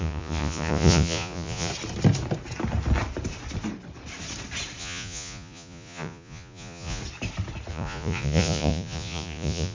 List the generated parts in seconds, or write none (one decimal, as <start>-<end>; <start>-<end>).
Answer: 0.0-1.7; 4.8-7.0; 7.7-9.7